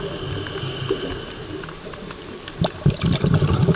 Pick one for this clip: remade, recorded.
recorded